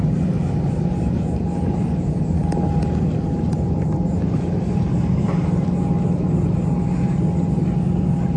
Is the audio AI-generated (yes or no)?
no